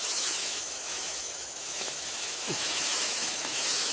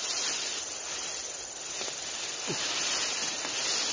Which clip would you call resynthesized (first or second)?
first